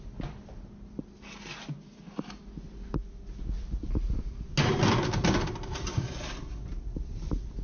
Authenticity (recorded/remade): recorded